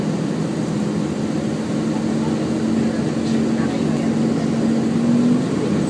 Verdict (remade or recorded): recorded